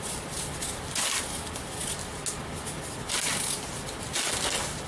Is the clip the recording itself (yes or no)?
yes